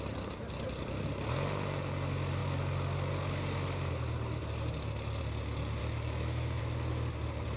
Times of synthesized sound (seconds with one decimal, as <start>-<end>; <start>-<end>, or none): 5.8-6.6